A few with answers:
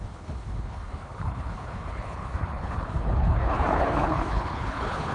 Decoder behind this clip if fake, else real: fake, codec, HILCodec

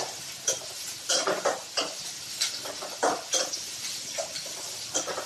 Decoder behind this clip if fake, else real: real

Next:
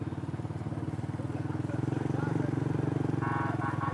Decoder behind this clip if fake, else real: real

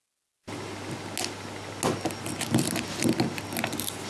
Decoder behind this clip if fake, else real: real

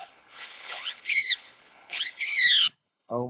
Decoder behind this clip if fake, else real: fake, codec, HILCodec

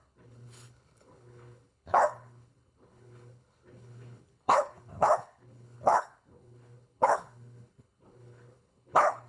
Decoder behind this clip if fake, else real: fake, codec, HILCodec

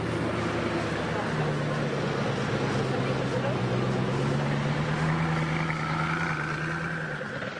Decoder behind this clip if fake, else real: real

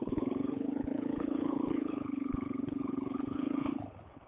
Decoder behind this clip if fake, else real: fake, codec, HILCodec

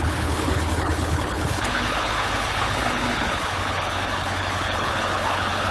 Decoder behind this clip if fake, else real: fake, codec, HILCodec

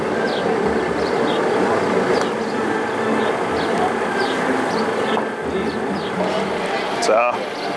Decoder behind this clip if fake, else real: real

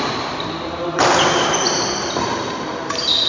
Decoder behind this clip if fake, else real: real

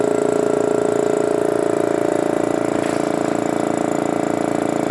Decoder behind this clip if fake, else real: real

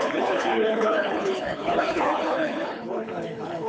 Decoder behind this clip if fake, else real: fake, codec, HILCodec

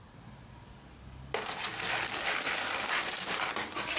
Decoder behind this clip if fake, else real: real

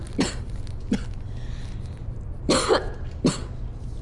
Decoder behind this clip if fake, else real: real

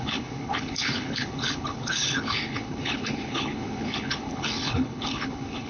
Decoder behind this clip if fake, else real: fake, codec, HILCodec